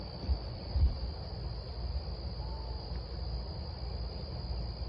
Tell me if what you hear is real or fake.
real